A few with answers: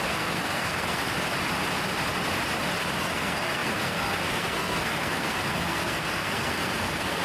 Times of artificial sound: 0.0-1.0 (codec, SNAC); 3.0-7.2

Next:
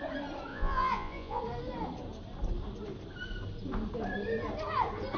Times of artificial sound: 0.5-1.4 (vocoder, Vocos)

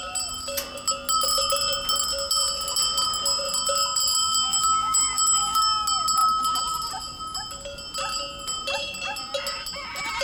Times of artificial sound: 4.2-5.6 (vocoder, BigVGAN v2)